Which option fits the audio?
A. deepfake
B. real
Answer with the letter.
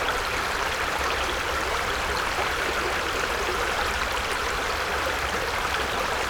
A